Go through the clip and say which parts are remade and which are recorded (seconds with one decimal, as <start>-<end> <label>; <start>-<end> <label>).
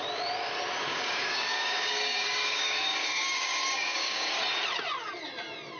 0.0-0.9 recorded; 0.9-4.4 remade; 4.4-5.8 recorded